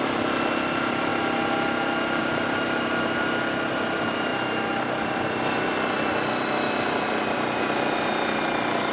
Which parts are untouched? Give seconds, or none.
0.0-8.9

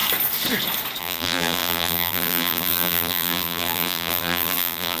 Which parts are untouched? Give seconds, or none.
0.0-1.0